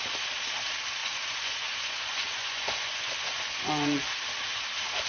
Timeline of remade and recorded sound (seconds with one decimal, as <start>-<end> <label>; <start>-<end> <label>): 0.0-1.0 recorded; 1.0-4.1 remade; 4.1-5.1 recorded